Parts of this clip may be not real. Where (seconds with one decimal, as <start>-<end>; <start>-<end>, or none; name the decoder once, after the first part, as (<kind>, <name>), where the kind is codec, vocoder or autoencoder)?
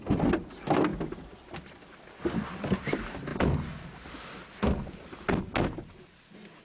none